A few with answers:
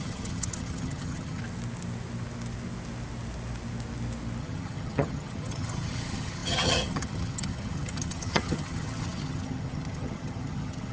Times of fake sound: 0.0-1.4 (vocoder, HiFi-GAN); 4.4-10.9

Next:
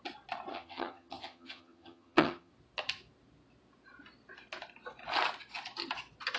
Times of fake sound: 0.5-2.5 (vocoder, HiFi-GAN)

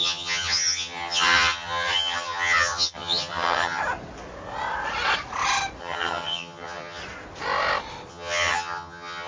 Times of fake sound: 0.0-3.8 (vocoder, HiFi-GAN); 5.8-7.0; 8.1-9.3